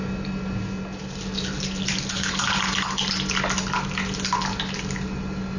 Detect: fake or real real